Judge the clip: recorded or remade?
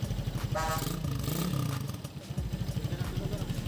recorded